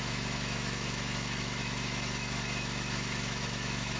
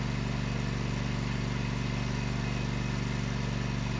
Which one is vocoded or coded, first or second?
first